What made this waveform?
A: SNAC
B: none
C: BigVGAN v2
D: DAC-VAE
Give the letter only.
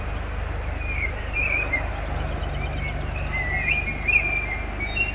B